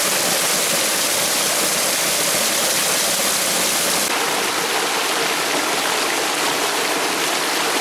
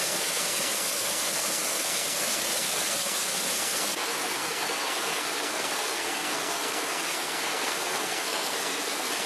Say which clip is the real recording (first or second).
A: first